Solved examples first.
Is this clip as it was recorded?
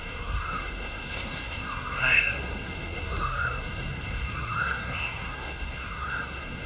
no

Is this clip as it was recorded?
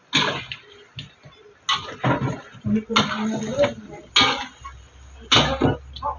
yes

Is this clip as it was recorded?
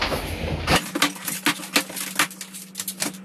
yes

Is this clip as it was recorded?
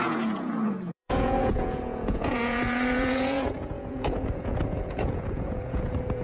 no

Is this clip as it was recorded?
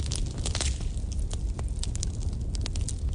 yes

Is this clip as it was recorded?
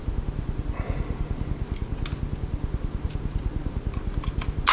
yes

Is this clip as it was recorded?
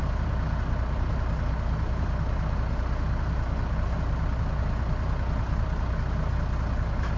yes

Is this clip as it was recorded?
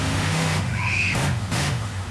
no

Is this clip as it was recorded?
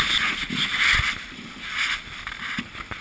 yes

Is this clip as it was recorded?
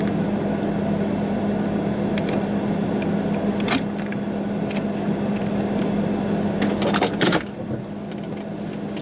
yes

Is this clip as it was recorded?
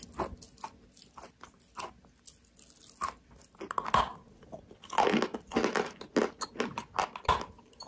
yes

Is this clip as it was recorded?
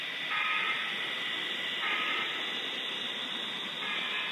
yes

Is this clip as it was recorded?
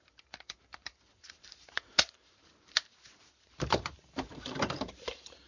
no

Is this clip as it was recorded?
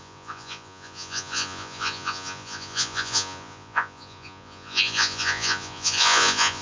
no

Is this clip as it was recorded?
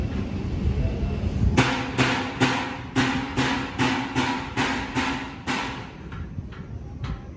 yes